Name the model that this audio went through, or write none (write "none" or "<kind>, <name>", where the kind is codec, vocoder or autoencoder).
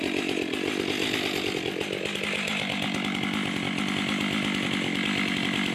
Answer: none